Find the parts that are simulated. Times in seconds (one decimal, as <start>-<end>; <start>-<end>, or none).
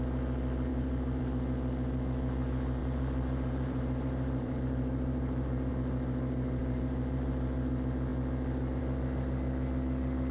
0.7-1.2; 2.8-5.7; 6.6-7.3